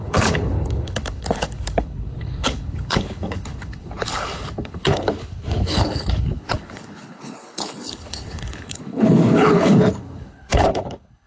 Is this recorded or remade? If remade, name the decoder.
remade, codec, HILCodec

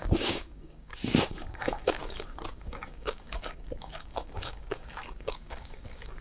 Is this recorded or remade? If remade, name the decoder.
remade, codec, DAC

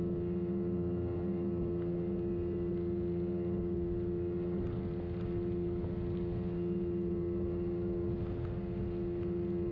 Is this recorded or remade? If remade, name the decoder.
recorded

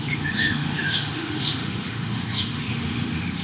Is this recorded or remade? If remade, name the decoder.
remade, autoencoder, DAC-VAE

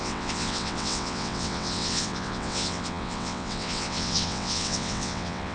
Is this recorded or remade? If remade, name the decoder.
remade, vocoder, WaveNeXt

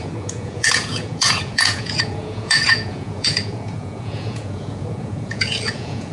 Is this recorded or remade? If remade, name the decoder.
remade, vocoder, Vocos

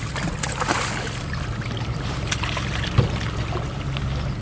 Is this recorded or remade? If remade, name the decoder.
recorded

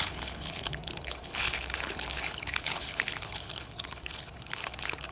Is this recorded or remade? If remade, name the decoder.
remade, codec, HILCodec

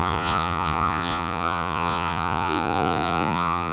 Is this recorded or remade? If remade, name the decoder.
remade, vocoder, Vocos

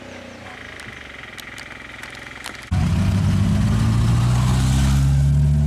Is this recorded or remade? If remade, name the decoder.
recorded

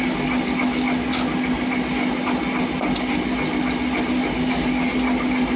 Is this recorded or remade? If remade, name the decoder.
recorded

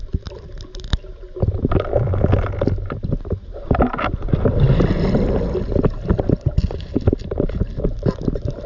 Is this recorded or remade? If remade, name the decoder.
recorded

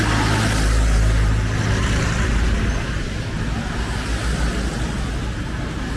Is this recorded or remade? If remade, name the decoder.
recorded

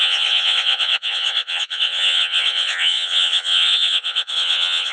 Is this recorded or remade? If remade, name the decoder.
remade, vocoder, WaveNeXt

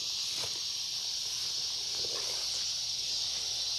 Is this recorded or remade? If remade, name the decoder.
recorded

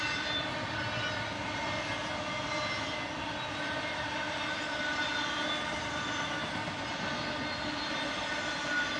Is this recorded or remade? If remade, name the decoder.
recorded